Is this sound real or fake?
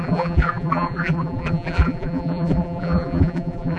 fake